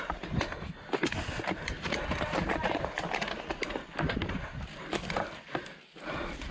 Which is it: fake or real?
real